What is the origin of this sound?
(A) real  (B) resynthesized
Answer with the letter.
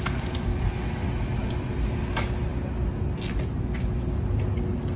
A